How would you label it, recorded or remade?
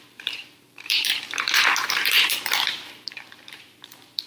remade